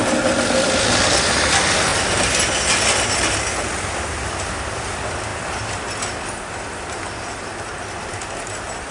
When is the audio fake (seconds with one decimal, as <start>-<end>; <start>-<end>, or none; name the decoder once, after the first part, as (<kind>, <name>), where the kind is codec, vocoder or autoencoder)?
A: none